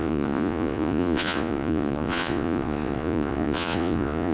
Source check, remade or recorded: remade